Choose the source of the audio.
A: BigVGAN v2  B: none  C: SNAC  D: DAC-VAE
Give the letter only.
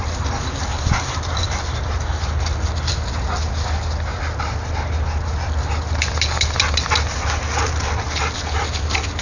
B